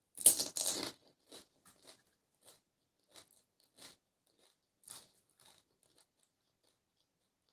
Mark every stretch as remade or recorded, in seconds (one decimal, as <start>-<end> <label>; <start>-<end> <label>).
0.0-7.5 recorded